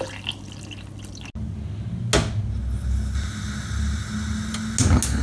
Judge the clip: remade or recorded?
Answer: recorded